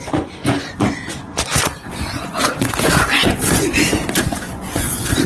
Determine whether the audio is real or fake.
fake